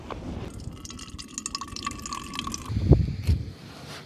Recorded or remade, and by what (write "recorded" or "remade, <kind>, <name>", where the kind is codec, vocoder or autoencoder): recorded